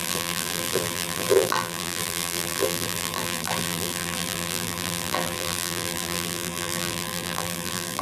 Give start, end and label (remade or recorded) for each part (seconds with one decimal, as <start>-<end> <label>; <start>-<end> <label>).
0.0-8.0 remade